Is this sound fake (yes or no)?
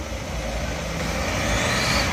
no